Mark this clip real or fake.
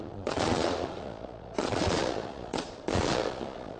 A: fake